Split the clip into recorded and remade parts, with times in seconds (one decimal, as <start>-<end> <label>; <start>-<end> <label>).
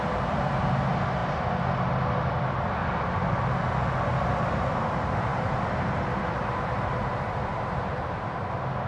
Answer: 0.0-5.3 recorded; 5.3-8.5 remade; 8.5-8.9 recorded